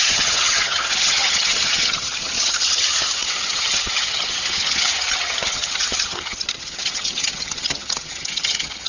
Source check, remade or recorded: remade